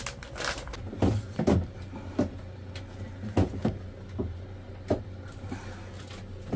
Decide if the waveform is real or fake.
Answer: real